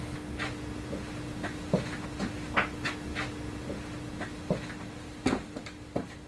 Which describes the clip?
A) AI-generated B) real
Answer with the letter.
B